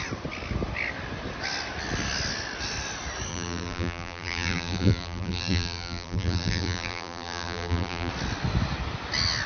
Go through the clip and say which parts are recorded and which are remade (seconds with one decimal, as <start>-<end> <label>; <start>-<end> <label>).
0.0-3.3 recorded; 3.3-8.1 remade; 8.1-9.5 recorded